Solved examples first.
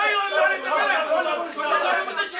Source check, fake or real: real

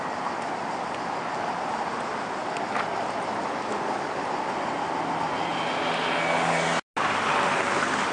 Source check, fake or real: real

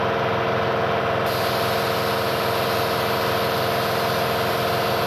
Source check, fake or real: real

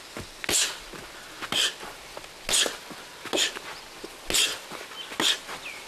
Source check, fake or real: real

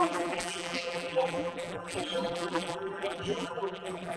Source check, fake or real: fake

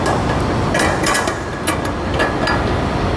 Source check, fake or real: real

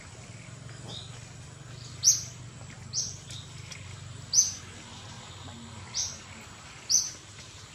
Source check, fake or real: real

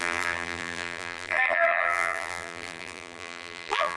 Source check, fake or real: fake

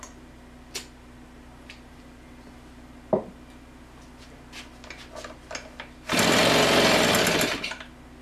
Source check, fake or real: real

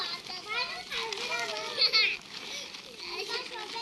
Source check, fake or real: real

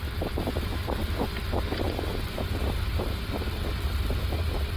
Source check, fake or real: real